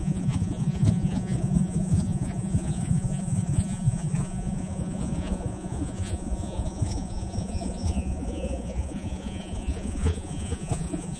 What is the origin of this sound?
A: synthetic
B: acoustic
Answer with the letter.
A